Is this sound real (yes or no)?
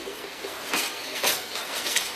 no